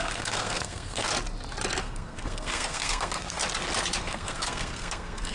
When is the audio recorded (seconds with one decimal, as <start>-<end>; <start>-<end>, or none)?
1.1-1.8; 3.4-4.0